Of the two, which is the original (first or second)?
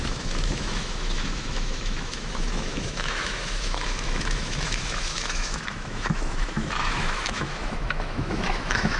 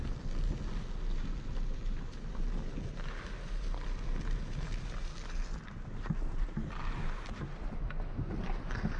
second